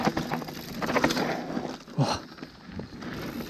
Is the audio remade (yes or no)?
no